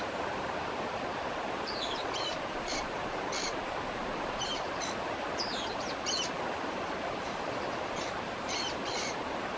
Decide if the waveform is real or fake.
fake